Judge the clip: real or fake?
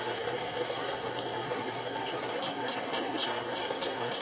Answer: fake